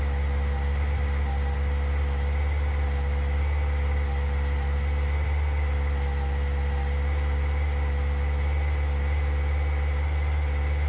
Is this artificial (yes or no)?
no